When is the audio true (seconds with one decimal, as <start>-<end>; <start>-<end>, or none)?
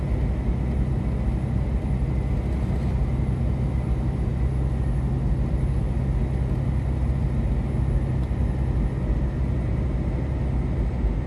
0.0-11.3